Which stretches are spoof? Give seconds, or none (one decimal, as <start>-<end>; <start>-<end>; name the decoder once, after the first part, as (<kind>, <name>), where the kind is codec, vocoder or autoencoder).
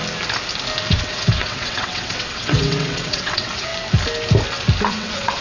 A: 0.9-3.7 (vocoder, WaveNeXt); 4.9-5.4